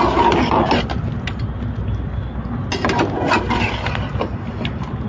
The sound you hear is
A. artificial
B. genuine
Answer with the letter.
B